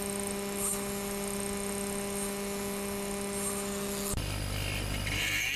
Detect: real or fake real